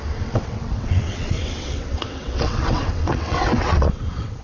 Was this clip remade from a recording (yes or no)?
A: yes